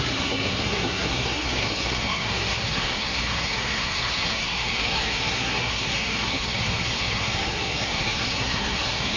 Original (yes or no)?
no